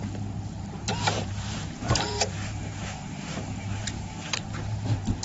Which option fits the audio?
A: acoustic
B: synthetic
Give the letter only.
B